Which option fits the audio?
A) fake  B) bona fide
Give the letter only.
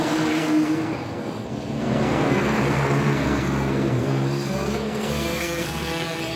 A